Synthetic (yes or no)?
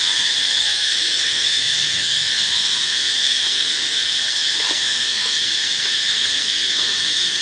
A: yes